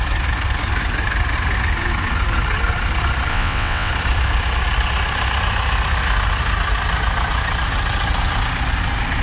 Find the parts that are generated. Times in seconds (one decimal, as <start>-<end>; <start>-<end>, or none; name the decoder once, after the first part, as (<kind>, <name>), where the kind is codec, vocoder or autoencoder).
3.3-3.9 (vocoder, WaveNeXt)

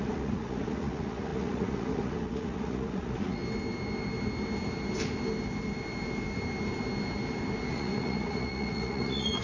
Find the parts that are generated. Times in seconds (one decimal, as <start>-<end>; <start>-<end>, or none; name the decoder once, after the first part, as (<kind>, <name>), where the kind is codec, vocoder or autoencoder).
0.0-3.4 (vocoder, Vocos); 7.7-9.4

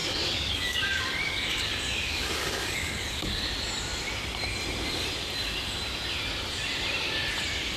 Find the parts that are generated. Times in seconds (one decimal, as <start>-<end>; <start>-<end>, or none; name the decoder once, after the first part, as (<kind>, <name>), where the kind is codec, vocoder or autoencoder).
0.0-3.4 (codec, DAC)